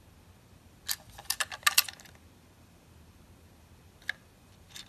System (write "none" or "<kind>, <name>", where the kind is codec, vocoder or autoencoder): none